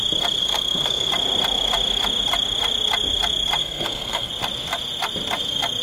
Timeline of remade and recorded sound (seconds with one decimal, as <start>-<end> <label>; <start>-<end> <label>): 0.0-0.4 recorded; 0.4-1.1 remade; 1.1-3.6 recorded; 3.6-4.3 remade; 4.3-5.8 recorded